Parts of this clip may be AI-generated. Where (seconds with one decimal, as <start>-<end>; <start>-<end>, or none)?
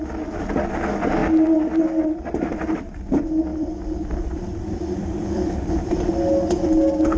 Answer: 3.5-5.9